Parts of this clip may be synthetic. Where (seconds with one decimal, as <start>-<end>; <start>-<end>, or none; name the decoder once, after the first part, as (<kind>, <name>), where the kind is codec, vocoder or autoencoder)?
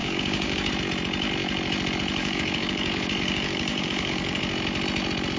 0.0-0.7 (codec, DAC); 2.2-4.4